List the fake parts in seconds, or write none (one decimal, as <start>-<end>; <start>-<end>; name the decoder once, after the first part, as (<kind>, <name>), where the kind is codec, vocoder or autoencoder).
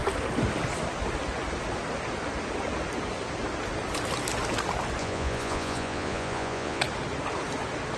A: 5.0-6.8 (vocoder, Vocos)